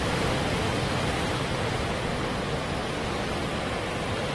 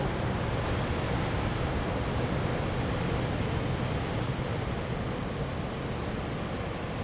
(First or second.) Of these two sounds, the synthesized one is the first